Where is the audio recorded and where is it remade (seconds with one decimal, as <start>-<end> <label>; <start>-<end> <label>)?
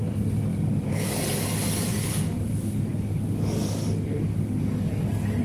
0.0-0.5 recorded; 0.5-1.2 remade; 1.2-1.9 recorded; 1.9-5.4 remade